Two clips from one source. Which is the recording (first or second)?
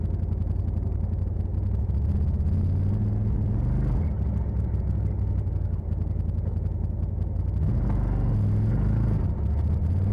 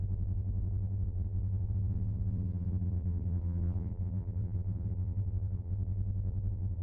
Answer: first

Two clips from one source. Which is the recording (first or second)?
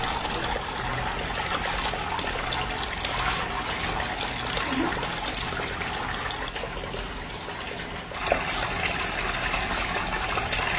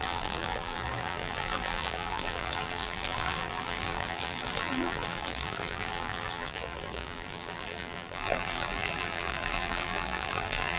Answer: first